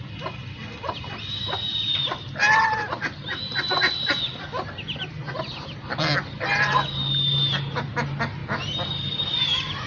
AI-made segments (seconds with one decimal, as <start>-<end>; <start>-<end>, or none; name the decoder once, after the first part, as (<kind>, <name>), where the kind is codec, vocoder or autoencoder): none